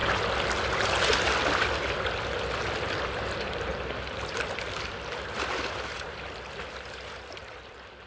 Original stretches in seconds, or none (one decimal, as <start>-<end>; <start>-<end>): 0.0-3.7; 7.4-8.1